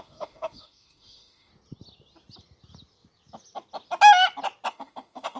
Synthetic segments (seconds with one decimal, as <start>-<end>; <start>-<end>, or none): 0.0-1.5; 4.7-5.4